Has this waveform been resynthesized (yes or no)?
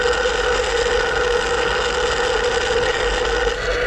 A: no